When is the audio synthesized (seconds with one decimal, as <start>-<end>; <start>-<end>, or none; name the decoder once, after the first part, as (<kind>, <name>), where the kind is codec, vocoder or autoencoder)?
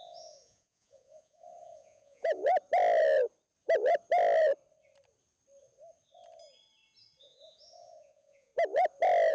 0.0-2.4 (vocoder, Vocos); 7.2-8.5